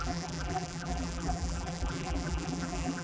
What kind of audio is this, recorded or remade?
remade